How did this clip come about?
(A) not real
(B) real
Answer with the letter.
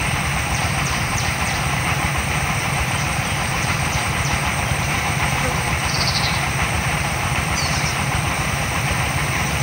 A